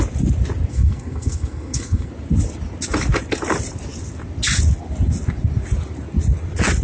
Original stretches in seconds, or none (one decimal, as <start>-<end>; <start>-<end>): 0.0-0.7; 2.1-6.8